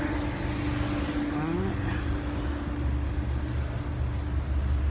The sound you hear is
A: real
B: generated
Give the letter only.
A